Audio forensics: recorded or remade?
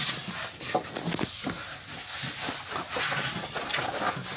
recorded